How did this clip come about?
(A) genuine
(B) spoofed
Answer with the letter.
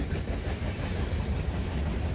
A